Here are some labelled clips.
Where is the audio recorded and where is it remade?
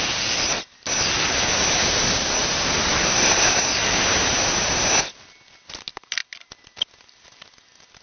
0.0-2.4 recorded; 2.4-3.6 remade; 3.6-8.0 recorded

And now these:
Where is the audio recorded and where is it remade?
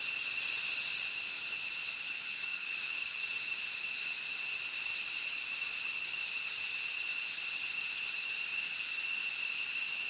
0.0-2.3 recorded; 2.3-3.3 remade; 3.3-10.1 recorded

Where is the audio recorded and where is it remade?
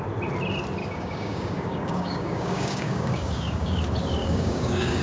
0.0-0.8 recorded; 0.8-3.8 remade; 3.8-4.2 recorded; 4.2-5.0 remade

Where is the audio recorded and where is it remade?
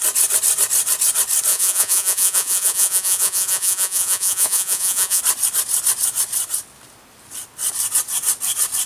0.0-1.5 recorded; 1.5-5.2 remade; 5.2-8.9 recorded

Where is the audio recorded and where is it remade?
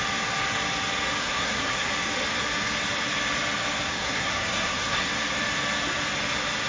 0.0-1.2 recorded; 1.2-1.9 remade; 1.9-3.9 recorded; 3.9-5.1 remade; 5.1-6.7 recorded